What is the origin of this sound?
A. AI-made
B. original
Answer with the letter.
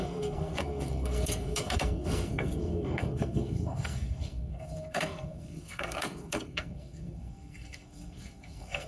A